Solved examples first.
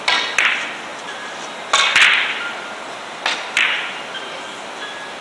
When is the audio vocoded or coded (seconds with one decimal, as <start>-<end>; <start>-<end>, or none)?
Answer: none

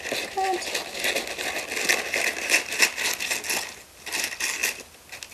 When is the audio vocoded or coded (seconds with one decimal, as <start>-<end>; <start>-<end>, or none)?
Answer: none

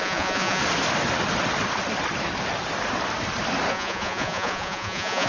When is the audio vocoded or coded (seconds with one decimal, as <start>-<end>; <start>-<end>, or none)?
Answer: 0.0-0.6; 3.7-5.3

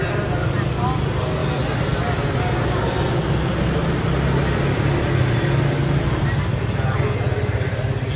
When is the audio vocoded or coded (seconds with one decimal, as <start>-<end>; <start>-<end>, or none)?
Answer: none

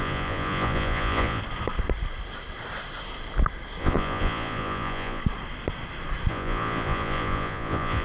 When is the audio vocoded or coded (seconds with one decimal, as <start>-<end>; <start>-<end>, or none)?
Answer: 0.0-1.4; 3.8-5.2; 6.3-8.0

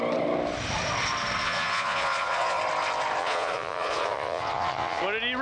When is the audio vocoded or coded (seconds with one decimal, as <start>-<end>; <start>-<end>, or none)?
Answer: 1.4-2.6; 3.2-5.0

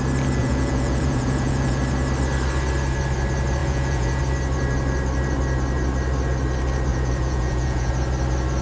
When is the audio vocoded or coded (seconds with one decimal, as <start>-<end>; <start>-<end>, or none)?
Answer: 0.4-1.8; 3.6-4.2; 6.9-7.9